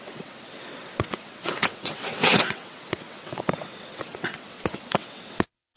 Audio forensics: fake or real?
fake